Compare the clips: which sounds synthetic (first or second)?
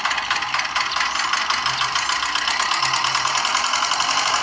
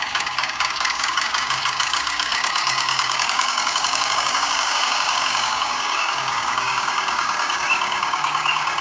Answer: second